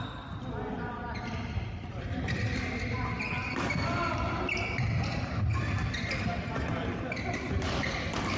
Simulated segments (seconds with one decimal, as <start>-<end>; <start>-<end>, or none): none